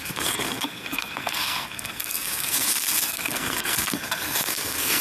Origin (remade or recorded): remade